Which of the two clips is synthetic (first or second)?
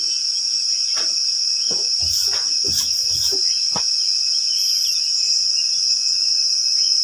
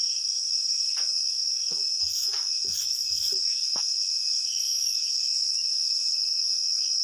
second